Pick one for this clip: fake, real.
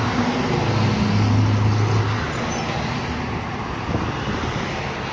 real